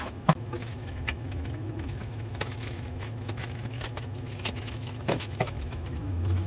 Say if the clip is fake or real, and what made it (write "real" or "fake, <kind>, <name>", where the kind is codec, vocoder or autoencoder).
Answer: fake, autoencoder, DAC-VAE